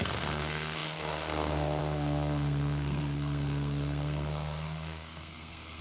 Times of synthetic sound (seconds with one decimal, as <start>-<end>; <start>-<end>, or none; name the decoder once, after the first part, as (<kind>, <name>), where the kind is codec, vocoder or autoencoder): 0.0-5.8 (codec, SNAC)

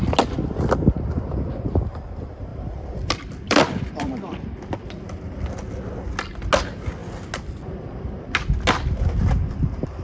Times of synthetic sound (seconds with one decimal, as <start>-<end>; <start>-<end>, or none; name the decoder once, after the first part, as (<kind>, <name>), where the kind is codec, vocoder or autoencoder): 2.5-4.5 (vocoder, BigVGAN v2)

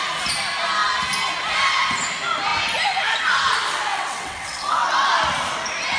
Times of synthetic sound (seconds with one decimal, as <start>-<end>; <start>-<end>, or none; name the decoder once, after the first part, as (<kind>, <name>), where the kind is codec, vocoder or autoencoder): 3.9-5.1 (vocoder, WaveNeXt)

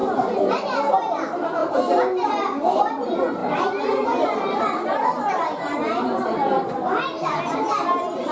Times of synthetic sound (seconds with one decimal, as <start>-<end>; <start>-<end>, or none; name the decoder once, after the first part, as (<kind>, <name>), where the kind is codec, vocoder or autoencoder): 0.9-8.3 (vocoder, BigVGAN v2)